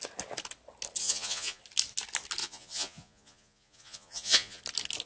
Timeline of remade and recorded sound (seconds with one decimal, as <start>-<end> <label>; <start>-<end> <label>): 0.0-1.0 recorded; 1.0-1.6 remade; 1.6-2.4 recorded; 2.4-4.6 remade; 4.6-5.1 recorded